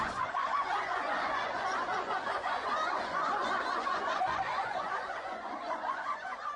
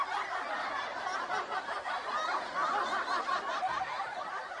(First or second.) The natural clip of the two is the second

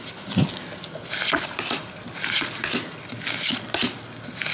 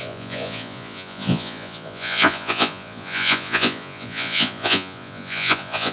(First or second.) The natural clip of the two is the first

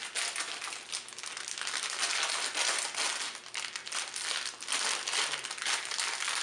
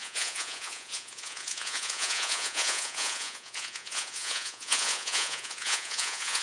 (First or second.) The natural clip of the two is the first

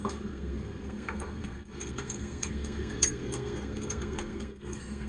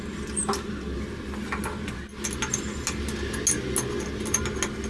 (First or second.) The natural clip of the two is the second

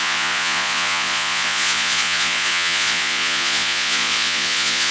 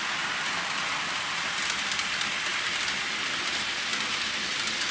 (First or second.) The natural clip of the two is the second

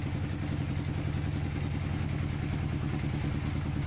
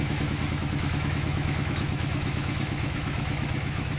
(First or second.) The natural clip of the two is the first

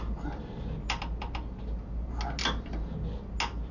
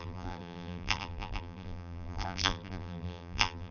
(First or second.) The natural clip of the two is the first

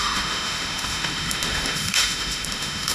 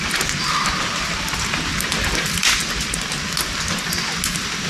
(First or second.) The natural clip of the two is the second